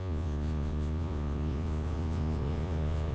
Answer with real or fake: fake